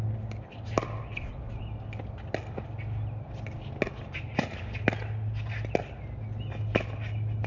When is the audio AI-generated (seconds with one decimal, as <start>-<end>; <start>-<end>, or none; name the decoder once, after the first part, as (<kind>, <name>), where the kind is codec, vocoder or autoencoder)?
none

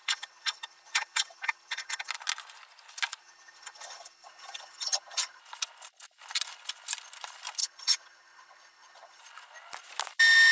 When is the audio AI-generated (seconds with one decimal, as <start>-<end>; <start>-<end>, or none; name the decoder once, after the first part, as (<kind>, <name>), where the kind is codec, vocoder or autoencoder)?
0.0-2.1 (vocoder, HiFi-GAN); 3.2-5.4; 7.6-9.2

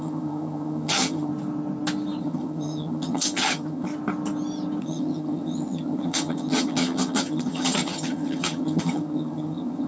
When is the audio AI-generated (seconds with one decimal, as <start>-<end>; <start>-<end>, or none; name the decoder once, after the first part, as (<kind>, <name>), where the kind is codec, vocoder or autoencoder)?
0.0-1.3 (vocoder, HiFi-GAN); 2.2-3.9; 4.8-9.9

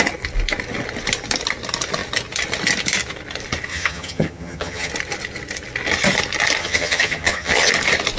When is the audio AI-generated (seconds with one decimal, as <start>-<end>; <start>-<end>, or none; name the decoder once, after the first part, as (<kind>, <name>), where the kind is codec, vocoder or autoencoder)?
3.7-4.9 (vocoder, HiFi-GAN); 6.6-7.7

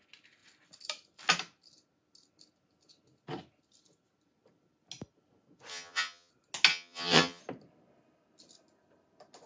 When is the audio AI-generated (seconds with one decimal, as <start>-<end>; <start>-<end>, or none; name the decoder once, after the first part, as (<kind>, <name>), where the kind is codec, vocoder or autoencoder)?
5.7-6.3 (vocoder, HiFi-GAN); 6.7-7.4

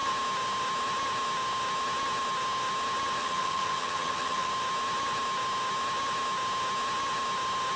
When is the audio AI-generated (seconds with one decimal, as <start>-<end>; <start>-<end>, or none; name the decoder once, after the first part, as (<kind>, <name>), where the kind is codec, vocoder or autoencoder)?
3.2-4.5 (vocoder, HiFi-GAN)

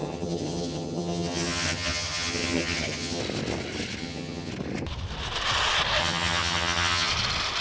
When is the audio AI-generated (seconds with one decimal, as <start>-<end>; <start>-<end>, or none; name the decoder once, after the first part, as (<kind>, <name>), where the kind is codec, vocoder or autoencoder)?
0.0-3.2 (vocoder, HiFi-GAN); 4.0-4.5; 6.0-7.1